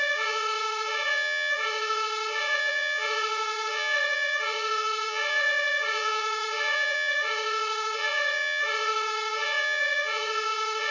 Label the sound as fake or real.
fake